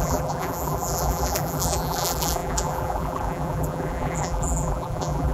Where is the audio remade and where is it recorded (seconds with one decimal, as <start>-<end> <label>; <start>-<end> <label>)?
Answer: 0.0-5.3 remade